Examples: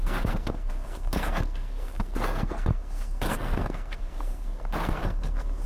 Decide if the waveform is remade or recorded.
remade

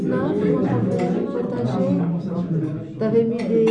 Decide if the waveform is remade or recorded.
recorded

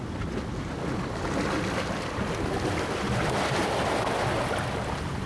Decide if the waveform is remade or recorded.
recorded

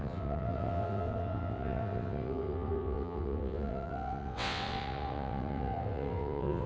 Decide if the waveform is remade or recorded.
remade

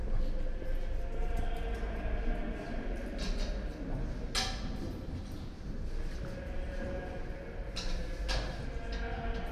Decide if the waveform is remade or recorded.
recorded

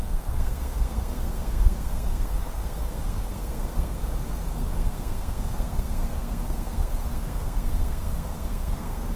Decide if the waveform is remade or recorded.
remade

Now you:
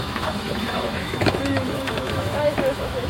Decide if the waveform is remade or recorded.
remade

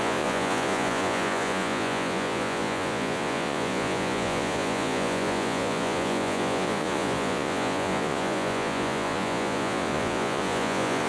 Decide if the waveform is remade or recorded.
remade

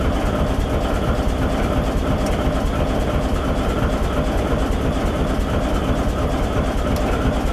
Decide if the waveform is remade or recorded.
recorded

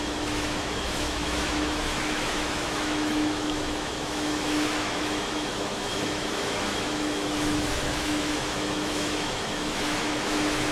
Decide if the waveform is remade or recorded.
remade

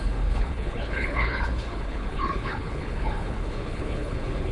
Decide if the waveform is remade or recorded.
remade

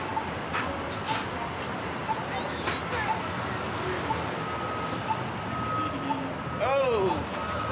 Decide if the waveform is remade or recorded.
recorded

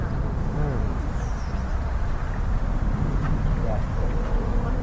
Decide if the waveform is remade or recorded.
recorded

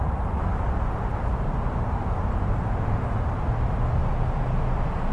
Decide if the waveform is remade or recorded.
recorded